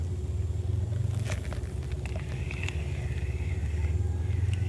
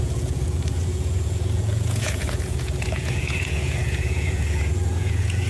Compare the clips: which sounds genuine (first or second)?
first